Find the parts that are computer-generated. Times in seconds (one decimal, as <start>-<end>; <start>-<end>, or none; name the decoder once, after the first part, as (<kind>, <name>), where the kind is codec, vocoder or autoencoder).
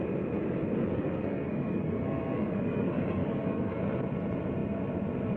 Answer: 0.6-3.8 (codec, SNAC)